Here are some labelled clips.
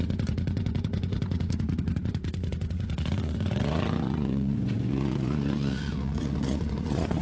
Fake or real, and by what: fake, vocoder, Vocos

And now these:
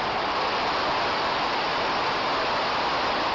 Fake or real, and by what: real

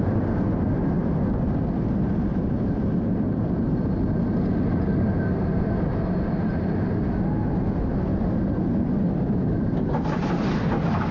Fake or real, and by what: real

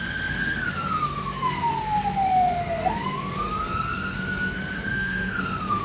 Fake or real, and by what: fake, codec, SNAC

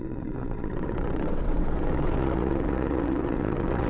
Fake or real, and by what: fake, vocoder, WaveNeXt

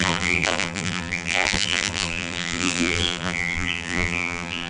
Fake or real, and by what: fake, vocoder, BigVGAN v2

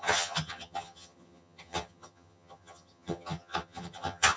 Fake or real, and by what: fake, vocoder, HiFi-GAN